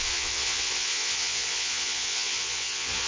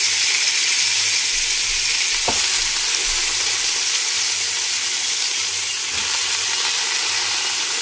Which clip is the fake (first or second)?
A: first